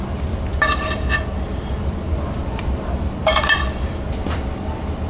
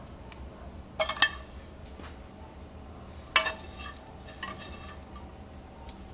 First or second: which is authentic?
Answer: second